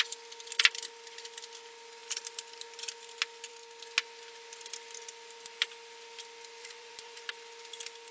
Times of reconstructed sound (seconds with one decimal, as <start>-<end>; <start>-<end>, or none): 6.6-7.2